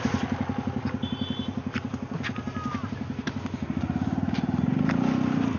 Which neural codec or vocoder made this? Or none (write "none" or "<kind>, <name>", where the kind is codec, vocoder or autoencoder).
none